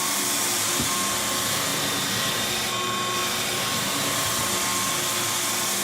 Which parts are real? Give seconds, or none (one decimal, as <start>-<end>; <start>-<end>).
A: 0.0-5.8